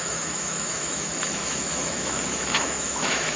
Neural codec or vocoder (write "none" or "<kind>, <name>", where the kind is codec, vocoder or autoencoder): autoencoder, DAC-VAE